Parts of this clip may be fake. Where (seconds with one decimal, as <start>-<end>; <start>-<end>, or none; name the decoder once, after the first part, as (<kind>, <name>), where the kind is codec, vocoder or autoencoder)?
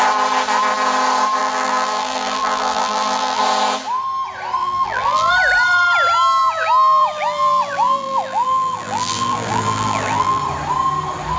1.4-3.4 (vocoder, BigVGAN v2); 4.6-5.3; 6.4-10.4